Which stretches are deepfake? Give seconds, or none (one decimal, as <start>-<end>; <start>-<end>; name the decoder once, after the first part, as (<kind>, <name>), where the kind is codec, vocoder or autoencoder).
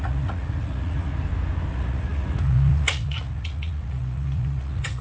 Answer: 0.0-1.1 (vocoder, Vocos); 1.7-5.0